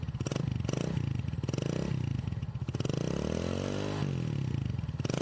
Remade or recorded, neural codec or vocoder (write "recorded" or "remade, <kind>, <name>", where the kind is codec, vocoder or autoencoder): recorded